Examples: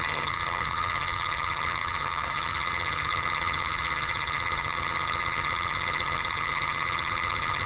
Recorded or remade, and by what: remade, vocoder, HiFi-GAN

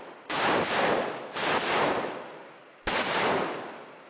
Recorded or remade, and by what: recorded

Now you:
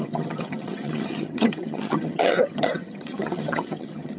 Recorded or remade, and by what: remade, vocoder, HiFi-GAN